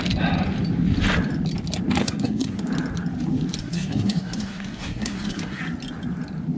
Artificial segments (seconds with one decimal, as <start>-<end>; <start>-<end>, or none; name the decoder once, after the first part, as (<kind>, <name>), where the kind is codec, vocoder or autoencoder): 2.0-2.6 (codec, SNAC); 3.6-5.6